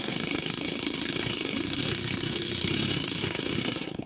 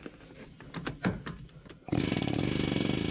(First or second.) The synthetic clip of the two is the first